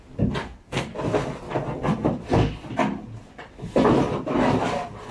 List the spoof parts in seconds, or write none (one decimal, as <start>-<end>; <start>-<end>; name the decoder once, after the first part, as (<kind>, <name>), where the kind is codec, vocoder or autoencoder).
0.4-0.9 (codec, SNAC)